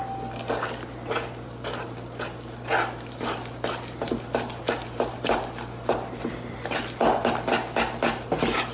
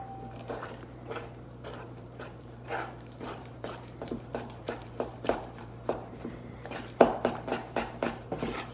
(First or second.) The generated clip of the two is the second